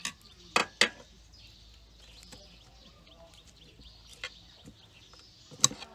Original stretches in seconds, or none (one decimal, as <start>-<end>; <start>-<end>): 0.0-5.9